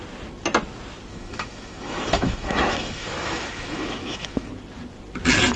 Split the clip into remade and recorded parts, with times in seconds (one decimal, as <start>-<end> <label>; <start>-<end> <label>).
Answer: 0.0-1.1 recorded; 1.1-4.5 remade; 4.5-5.6 recorded